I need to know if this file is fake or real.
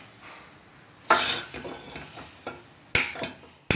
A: real